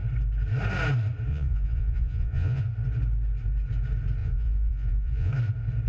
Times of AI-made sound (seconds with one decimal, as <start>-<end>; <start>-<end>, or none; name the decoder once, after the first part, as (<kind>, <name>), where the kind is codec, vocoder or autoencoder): 1.3-2.6 (vocoder, Vocos); 4.2-5.3